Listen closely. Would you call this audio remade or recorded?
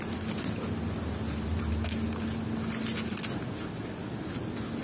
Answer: recorded